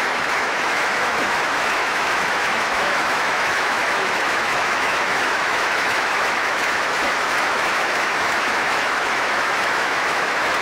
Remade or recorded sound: remade